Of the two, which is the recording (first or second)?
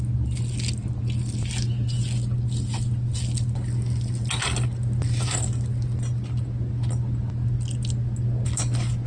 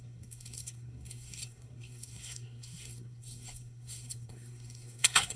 first